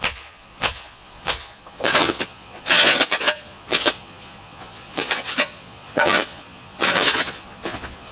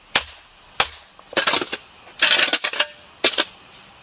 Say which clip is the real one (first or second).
second